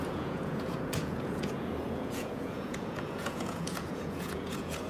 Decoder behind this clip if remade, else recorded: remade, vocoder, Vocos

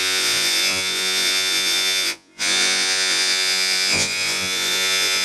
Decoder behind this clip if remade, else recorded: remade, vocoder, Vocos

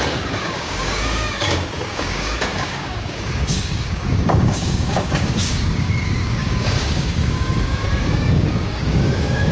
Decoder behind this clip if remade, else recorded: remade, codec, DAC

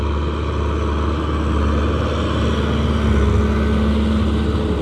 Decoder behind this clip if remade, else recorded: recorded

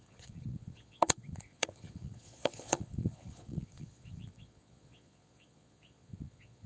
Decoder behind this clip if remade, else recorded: remade, vocoder, Vocos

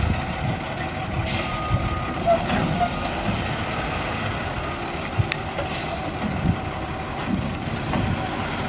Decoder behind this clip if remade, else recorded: recorded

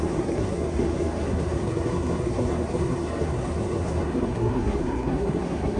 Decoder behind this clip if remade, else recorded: remade, codec, SNAC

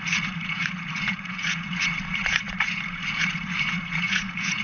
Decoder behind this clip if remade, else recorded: remade, vocoder, Vocos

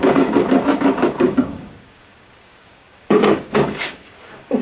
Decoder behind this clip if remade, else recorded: remade, codec, DAC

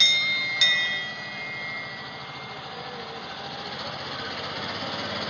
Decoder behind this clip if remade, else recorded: recorded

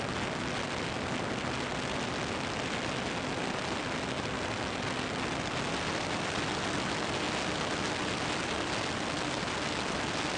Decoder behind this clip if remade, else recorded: recorded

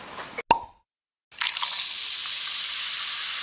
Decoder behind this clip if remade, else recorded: recorded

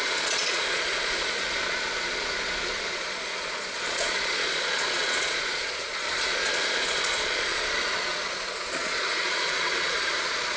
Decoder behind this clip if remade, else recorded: remade, vocoder, Vocos